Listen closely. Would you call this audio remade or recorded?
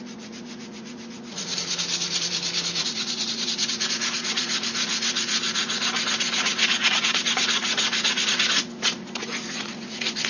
remade